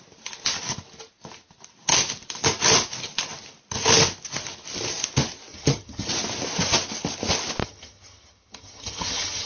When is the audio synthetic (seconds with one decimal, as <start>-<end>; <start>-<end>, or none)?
5.5-6.1; 7.6-9.5